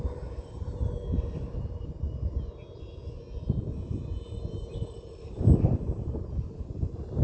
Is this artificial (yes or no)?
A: no